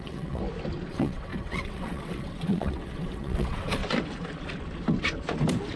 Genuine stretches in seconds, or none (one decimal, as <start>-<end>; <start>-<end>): 0.4-0.9; 3.8-5.8